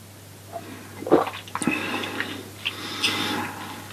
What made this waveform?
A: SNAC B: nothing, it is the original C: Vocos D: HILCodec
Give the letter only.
B